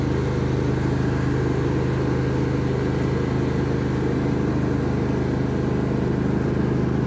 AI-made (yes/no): no